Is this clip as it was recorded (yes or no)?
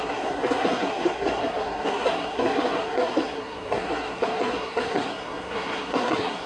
no